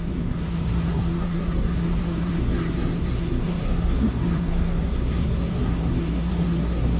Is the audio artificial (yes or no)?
yes